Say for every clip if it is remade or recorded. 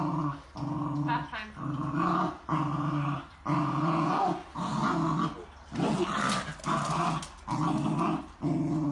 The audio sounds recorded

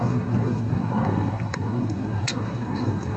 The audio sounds remade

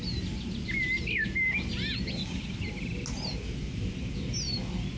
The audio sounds recorded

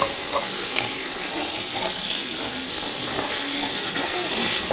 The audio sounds remade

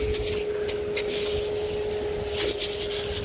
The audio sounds recorded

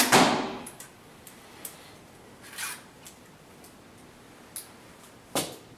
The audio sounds recorded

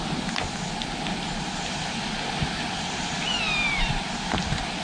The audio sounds recorded